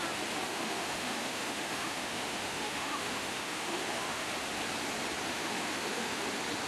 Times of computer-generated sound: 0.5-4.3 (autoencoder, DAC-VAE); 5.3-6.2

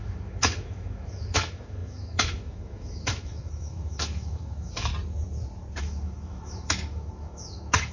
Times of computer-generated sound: 0.0-4.9 (autoencoder, DAC-VAE); 5.8-7.9